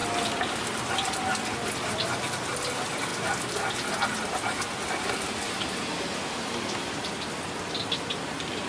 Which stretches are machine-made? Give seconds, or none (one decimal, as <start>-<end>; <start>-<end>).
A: none